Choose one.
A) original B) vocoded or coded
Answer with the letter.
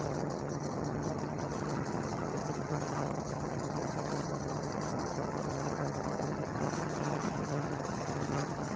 B